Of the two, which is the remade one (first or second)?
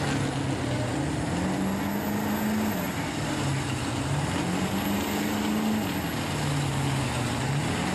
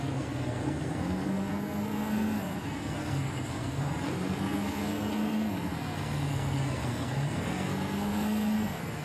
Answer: second